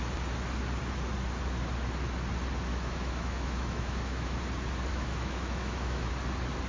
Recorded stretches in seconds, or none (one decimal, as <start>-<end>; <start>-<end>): 0.0-2.7; 4.4-4.9; 6.1-6.7